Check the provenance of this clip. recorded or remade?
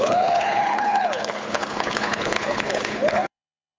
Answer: remade